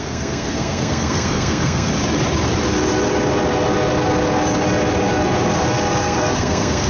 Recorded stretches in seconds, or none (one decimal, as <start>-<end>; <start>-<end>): 1.9-6.0